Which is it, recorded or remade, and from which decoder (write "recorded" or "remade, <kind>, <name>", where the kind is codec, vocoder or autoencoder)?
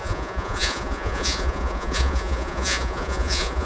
remade, vocoder, Vocos